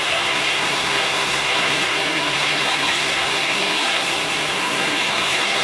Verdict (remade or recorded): remade